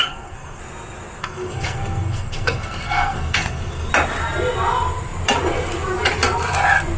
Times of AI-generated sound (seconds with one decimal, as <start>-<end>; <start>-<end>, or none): 0.0-0.6; 1.2-3.9